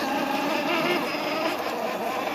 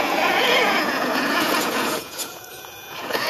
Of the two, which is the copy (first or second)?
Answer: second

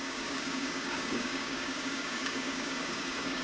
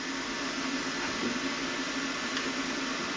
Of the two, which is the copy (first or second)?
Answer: first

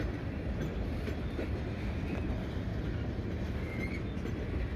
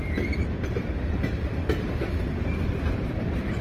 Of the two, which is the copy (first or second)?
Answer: second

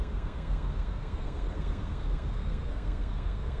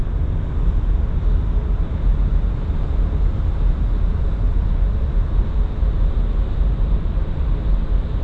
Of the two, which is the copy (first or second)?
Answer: first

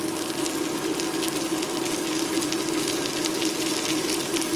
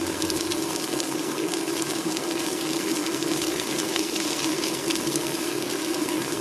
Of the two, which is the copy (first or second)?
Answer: second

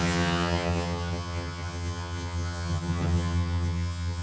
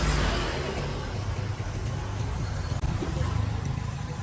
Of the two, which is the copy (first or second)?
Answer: first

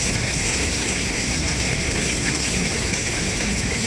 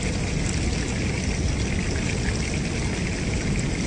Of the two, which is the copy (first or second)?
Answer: first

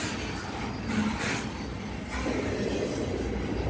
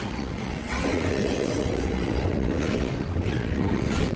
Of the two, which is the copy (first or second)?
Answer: second